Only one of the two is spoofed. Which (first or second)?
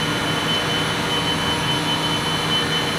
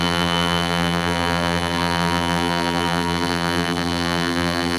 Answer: second